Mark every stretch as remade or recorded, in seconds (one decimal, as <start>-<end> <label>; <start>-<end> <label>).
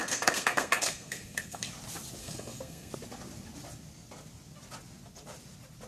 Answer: 0.0-1.7 remade; 1.7-2.2 recorded; 2.2-2.9 remade; 2.9-5.9 recorded